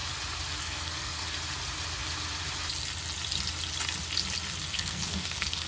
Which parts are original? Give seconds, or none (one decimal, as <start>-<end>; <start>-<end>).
0.0-0.6; 1.2-4.6